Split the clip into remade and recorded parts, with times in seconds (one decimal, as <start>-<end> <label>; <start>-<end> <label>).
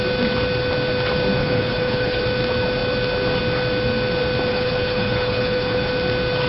0.0-1.4 recorded; 1.4-2.2 remade; 2.2-4.5 recorded; 4.5-5.9 remade; 5.9-6.5 recorded